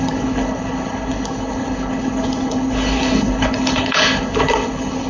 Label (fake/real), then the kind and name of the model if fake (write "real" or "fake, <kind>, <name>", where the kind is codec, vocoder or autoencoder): fake, codec, HILCodec